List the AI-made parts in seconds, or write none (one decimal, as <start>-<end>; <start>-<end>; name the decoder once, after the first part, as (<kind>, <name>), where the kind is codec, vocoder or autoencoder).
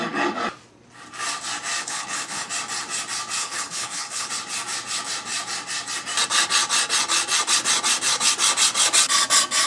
1.8-2.5 (codec, HILCodec); 3.4-4.3